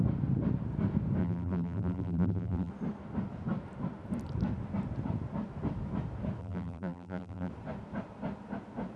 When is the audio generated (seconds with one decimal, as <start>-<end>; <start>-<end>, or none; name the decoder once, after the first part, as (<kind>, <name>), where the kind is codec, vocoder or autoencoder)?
1.2-2.7 (vocoder, BigVGAN v2); 6.4-7.5